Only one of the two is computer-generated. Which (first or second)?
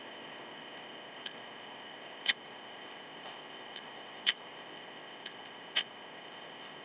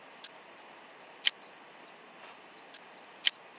first